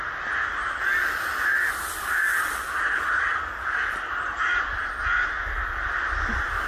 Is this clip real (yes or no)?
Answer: yes